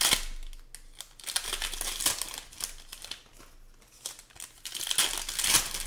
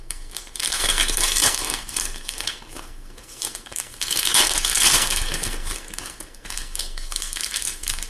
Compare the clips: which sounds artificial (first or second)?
second